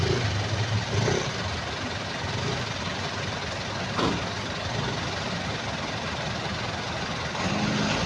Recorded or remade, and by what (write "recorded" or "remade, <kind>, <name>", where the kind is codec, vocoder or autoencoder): recorded